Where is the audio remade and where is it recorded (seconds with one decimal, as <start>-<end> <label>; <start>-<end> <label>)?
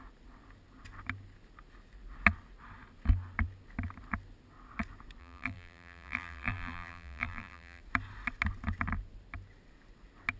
0.0-5.2 recorded; 5.2-7.8 remade; 7.8-10.4 recorded